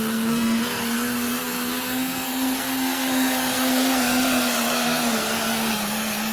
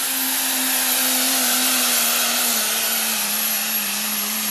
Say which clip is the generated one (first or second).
first